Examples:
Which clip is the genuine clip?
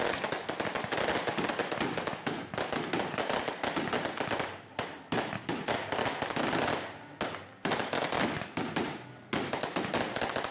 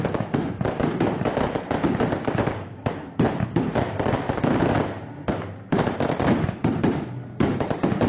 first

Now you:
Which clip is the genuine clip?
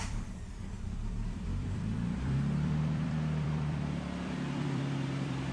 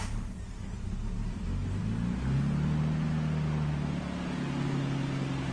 second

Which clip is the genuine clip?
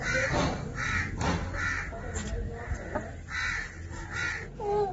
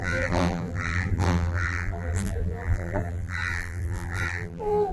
first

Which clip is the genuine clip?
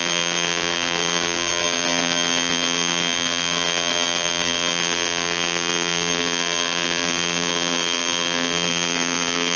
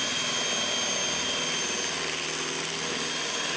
second